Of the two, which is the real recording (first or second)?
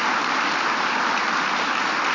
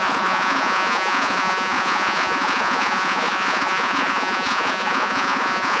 first